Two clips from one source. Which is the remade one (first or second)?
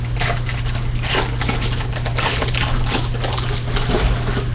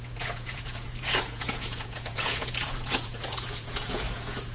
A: second